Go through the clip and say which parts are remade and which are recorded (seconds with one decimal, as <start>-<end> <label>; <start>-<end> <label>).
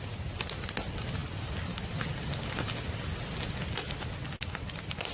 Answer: 0.0-5.1 recorded